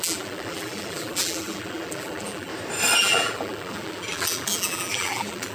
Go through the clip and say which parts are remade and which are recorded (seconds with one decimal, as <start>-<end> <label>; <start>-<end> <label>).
0.0-2.5 remade; 2.5-3.0 recorded; 3.0-5.5 remade